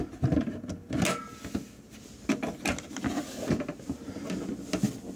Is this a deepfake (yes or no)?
no